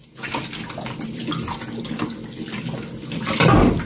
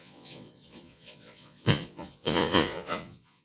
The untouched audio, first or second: first